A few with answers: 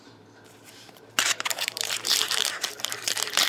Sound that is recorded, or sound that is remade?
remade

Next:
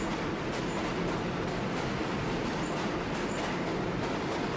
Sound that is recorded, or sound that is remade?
recorded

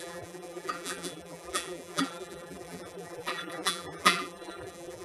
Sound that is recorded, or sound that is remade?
remade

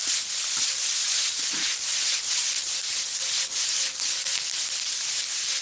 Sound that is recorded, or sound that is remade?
recorded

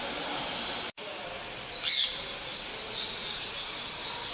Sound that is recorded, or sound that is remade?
recorded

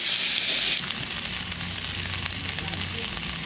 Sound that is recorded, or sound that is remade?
recorded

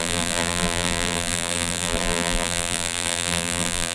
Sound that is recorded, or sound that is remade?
remade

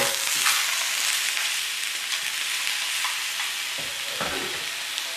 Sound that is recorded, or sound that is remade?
recorded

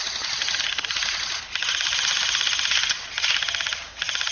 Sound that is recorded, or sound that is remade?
recorded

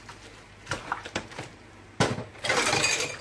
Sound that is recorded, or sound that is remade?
remade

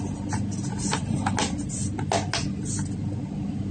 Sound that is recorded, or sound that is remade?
recorded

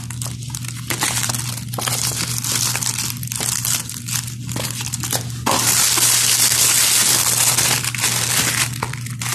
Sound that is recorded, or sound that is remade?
recorded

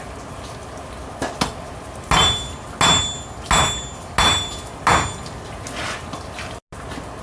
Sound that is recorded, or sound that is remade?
recorded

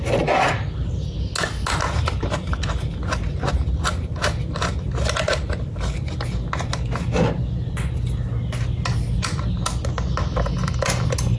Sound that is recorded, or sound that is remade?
recorded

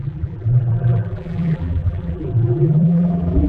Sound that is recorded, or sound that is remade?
remade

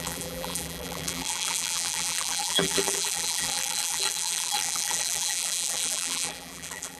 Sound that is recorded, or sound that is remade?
remade